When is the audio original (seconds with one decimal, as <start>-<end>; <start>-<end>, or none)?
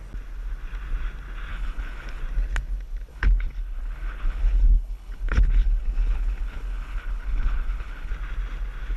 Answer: 0.0-1.5; 2.2-3.1; 8.1-9.0